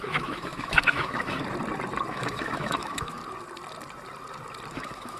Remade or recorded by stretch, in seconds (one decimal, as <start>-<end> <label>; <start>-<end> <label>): 0.0-1.4 remade; 1.4-2.1 recorded; 2.1-3.2 remade; 3.2-4.7 recorded; 4.7-5.2 remade